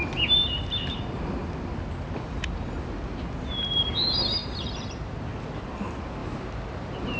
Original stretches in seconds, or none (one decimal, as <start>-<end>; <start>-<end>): 0.0-4.4; 5.2-6.2